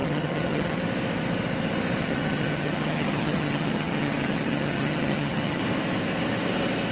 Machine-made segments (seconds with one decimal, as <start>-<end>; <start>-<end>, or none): 0.0-0.8; 2.0-5.6